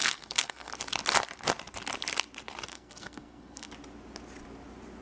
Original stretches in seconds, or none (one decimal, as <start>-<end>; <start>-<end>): 0.7-2.7; 3.7-5.0